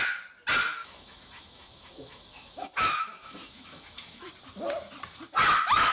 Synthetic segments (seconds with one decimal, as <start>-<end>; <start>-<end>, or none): 0.8-4.3